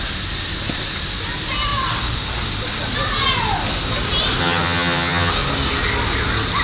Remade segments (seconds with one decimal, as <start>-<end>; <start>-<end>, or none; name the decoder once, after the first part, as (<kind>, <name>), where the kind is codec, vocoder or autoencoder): 4.4-5.3 (vocoder, HiFi-GAN)